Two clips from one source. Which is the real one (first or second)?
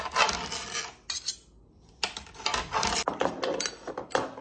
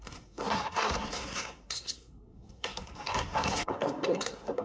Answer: first